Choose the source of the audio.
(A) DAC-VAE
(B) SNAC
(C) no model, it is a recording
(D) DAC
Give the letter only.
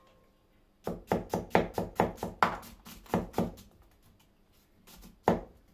C